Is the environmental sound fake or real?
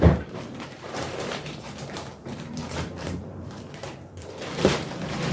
fake